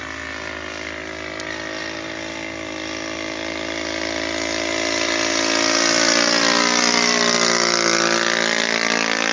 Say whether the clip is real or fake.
real